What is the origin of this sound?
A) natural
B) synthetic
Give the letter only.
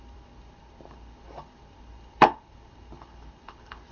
B